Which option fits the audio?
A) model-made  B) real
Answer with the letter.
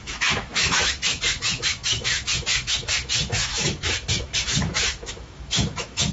A